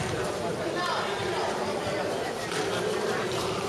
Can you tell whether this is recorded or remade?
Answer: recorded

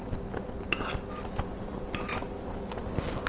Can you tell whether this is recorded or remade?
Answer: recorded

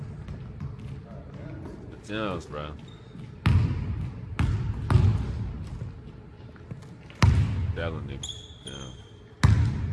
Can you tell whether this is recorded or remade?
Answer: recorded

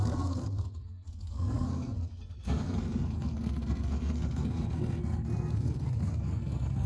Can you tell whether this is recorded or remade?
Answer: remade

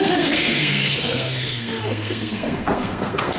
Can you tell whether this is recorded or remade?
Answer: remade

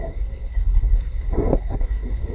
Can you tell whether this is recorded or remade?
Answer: remade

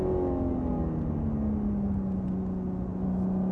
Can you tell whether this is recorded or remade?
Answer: recorded